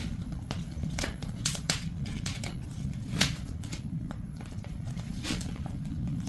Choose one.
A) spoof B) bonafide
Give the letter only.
A